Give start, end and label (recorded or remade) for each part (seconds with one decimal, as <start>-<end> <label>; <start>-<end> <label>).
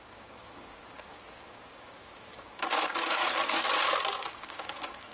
0.0-3.2 remade; 3.2-4.2 recorded; 4.2-5.1 remade